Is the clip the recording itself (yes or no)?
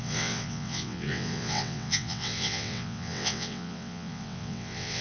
no